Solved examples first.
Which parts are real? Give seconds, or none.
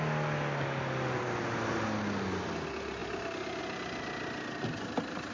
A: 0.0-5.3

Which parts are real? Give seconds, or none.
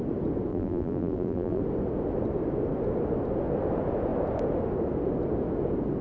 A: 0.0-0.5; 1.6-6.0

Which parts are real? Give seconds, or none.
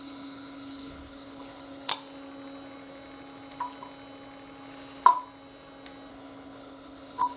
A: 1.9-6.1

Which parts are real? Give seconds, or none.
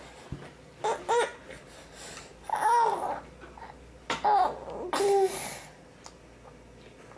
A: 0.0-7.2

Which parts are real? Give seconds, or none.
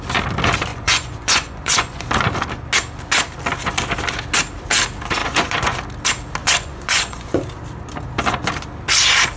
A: 0.0-0.7; 2.0-5.2; 5.8-6.4; 7.4-9.4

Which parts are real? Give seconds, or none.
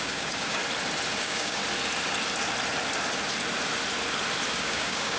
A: 0.6-1.2; 1.6-4.5